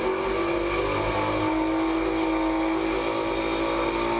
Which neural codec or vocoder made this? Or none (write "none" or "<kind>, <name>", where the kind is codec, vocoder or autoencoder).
none